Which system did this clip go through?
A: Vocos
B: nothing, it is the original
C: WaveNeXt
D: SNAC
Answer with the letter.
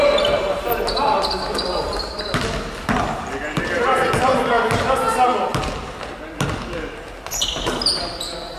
B